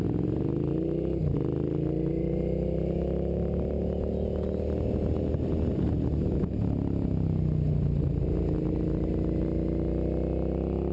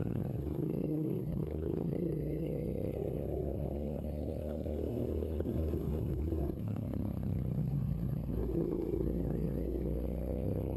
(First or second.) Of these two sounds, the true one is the first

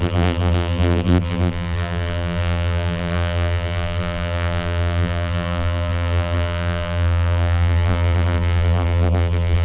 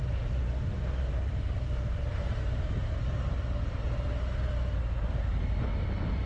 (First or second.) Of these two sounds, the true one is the second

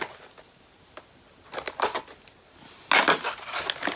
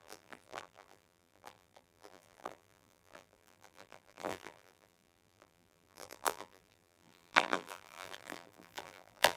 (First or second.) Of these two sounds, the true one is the first